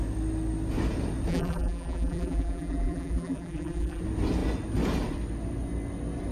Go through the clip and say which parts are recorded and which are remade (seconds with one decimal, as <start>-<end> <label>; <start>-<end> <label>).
0.0-1.3 recorded; 1.3-4.0 remade; 4.0-6.3 recorded